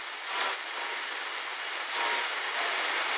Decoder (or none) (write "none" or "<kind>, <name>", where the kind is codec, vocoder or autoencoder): vocoder, BigVGAN v2